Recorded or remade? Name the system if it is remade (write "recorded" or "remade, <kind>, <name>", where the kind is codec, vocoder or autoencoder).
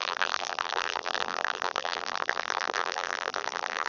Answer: remade, vocoder, BigVGAN v2